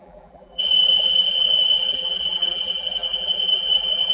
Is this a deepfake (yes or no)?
yes